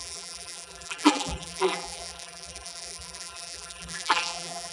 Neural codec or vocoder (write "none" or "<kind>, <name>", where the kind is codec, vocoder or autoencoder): vocoder, BigVGAN v2